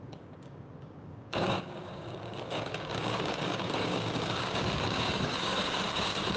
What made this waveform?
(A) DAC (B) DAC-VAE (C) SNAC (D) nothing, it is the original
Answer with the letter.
A